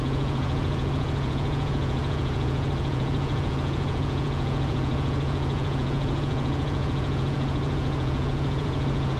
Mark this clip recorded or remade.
remade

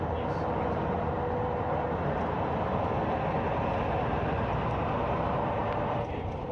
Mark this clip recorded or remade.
recorded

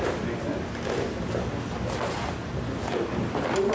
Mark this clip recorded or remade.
recorded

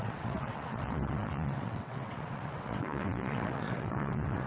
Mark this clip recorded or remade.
remade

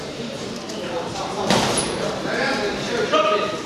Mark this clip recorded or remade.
remade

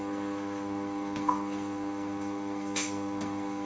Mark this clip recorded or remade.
remade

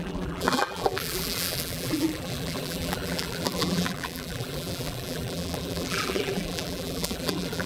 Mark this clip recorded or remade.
remade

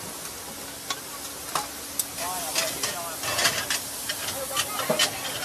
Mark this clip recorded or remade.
recorded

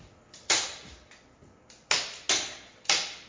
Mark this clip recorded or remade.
recorded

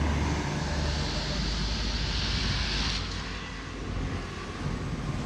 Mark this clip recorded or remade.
recorded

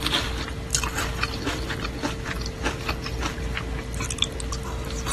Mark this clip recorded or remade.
recorded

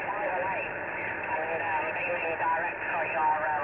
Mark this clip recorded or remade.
recorded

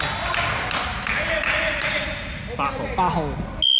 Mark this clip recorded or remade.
recorded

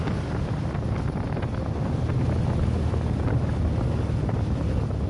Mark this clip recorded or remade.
recorded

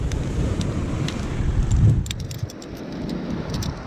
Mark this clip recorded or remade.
recorded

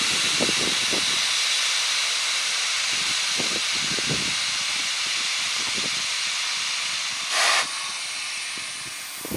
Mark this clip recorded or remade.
recorded